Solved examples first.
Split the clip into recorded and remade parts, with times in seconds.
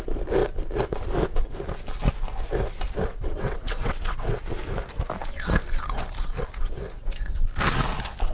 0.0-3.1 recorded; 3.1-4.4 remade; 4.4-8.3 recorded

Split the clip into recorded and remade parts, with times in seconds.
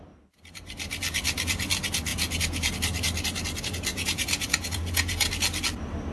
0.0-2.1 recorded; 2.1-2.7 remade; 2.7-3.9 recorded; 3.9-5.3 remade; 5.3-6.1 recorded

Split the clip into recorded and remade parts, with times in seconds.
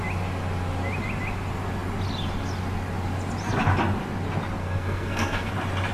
0.0-4.6 recorded; 4.6-5.5 remade; 5.5-5.9 recorded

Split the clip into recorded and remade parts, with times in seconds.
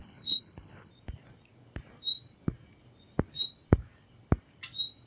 0.0-0.9 remade; 0.9-5.1 recorded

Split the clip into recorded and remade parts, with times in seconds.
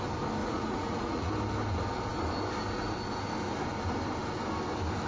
0.0-0.4 recorded; 0.4-1.3 remade; 1.3-5.1 recorded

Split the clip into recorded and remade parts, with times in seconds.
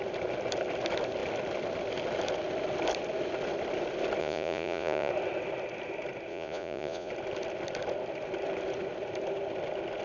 0.0-4.2 recorded; 4.2-5.1 remade; 5.1-6.3 recorded; 6.3-7.1 remade; 7.1-10.0 recorded